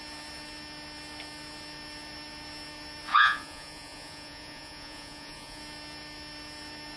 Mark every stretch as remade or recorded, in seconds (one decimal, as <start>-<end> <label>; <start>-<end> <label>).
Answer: 0.0-3.1 recorded; 3.1-5.6 remade; 5.6-7.0 recorded